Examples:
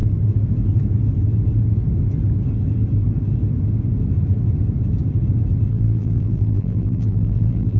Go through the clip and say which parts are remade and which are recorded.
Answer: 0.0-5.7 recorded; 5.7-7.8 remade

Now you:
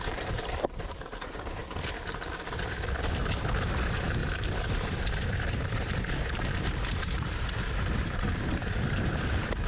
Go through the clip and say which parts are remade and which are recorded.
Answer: 0.0-1.6 remade; 1.6-3.2 recorded; 3.2-4.2 remade; 4.2-4.7 recorded; 4.7-9.7 remade

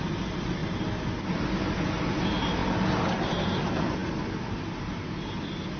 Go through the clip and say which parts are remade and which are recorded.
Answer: 0.0-5.8 recorded